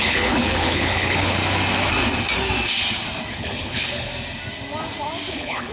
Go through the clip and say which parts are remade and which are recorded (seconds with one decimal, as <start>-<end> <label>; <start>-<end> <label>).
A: 0.0-1.4 remade; 1.4-3.3 recorded; 3.3-4.1 remade; 4.1-5.3 recorded; 5.3-5.7 remade